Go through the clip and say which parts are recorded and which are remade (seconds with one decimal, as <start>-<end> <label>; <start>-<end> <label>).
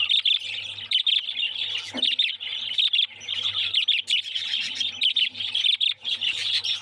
0.0-6.8 recorded